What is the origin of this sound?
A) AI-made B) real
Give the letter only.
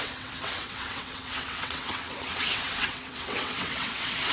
A